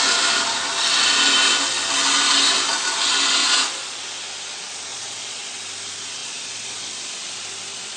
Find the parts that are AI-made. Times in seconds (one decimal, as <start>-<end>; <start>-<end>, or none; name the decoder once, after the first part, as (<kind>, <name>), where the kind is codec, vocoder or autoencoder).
3.4-4.0 (vocoder, Vocos); 4.9-5.6; 6.2-6.9